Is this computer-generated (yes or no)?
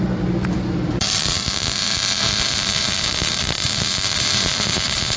yes